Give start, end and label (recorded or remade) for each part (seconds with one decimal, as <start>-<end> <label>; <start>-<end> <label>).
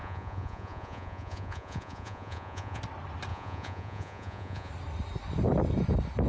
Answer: 0.0-2.8 remade; 2.8-3.3 recorded; 3.3-4.7 remade; 4.7-6.3 recorded